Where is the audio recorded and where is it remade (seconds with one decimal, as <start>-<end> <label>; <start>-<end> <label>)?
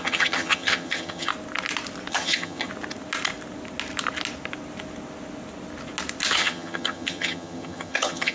0.0-1.3 remade; 1.3-2.1 recorded; 2.1-2.7 remade; 2.7-6.3 recorded; 6.3-8.3 remade